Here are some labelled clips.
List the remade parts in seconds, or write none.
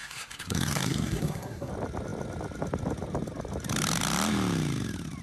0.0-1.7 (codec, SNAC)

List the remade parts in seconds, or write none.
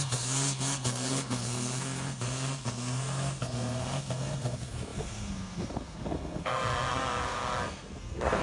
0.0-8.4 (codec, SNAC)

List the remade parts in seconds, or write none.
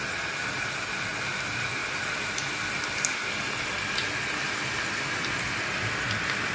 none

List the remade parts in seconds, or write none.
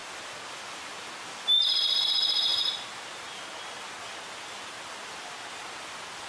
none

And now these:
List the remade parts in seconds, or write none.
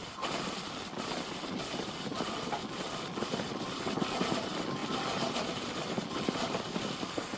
none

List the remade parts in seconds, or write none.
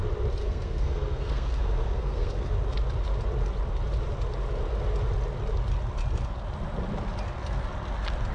0.4-2.5 (codec, SNAC)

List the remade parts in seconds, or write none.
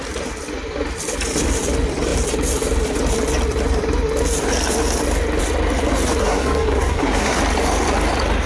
6.2-7.4 (codec, SNAC)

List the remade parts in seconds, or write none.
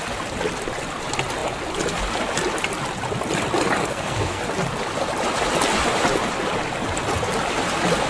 3.8-4.4 (codec, SNAC)